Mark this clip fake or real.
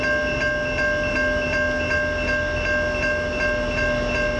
real